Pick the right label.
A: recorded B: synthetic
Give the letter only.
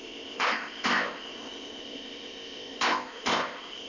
B